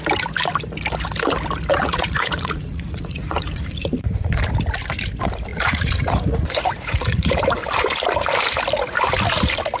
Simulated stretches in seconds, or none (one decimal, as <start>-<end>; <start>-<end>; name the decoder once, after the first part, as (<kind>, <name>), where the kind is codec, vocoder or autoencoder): 1.7-4.4 (vocoder, Vocos); 5.5-7.4